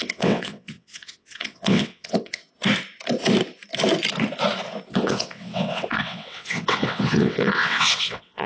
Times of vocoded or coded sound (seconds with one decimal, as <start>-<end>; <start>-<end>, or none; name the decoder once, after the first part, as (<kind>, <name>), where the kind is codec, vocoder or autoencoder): 0.0-2.4 (vocoder, WaveNeXt); 4.9-8.5